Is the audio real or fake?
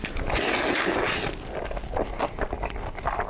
real